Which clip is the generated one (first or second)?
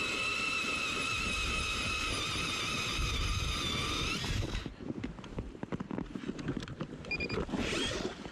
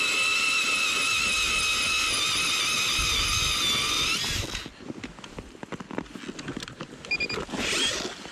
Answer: first